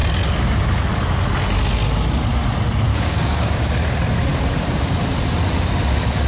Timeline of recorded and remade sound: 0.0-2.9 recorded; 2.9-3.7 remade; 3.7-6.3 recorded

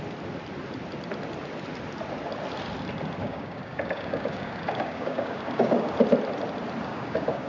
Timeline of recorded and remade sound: 0.0-3.2 recorded; 3.2-5.9 remade; 5.9-6.9 recorded; 6.9-7.5 remade

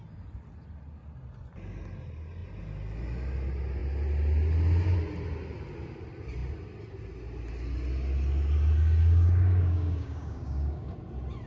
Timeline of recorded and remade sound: 0.0-9.0 recorded; 9.0-10.9 remade; 10.9-11.5 recorded

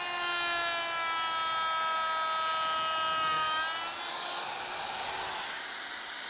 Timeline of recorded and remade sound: 0.0-4.1 recorded; 4.1-4.6 remade; 4.6-6.3 recorded

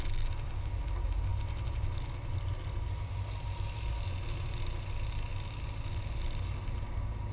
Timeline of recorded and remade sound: 0.0-7.3 recorded